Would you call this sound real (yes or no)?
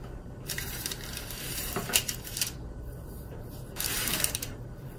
no